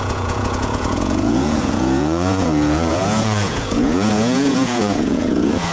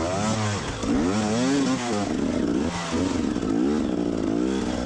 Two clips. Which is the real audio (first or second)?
second